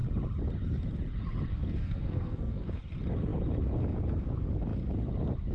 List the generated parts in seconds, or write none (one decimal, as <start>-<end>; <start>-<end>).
1.5-2.8